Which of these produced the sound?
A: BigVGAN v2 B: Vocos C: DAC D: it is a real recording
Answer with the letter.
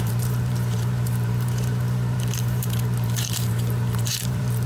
A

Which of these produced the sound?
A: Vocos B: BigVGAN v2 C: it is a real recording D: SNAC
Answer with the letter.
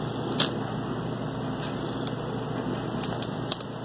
C